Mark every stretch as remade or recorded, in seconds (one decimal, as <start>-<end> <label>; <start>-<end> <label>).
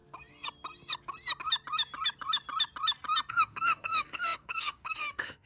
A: 0.0-3.3 recorded; 3.3-5.5 remade